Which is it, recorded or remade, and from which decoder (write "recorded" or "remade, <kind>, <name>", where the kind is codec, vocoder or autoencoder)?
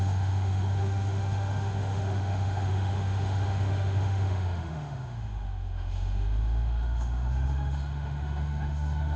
remade, autoencoder, DAC-VAE